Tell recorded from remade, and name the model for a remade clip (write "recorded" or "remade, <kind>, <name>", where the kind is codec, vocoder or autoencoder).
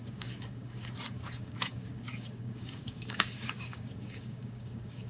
remade, codec, DAC